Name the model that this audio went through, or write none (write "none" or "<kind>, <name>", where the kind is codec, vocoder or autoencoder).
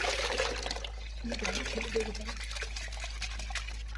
none